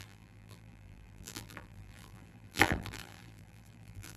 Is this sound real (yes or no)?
no